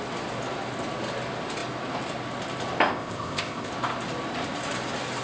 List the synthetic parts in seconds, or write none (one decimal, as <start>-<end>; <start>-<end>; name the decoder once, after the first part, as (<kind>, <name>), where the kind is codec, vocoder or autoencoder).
2.9-3.7 (codec, ZipCodec)